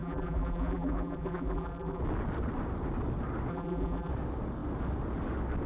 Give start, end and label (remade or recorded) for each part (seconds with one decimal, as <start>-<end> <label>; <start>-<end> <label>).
0.0-2.0 remade; 2.0-3.5 recorded; 3.5-4.1 remade; 4.1-5.7 recorded